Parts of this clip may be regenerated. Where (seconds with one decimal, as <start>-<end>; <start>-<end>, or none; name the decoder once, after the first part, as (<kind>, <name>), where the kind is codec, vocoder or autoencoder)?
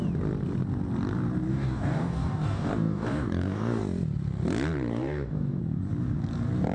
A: 1.5-3.8 (codec, DAC); 4.9-5.6